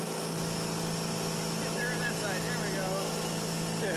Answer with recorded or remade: recorded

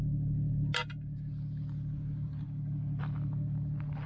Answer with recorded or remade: recorded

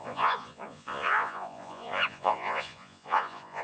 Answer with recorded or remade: remade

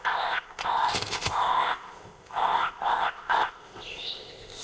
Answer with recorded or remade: remade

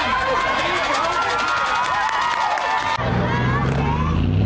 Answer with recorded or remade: recorded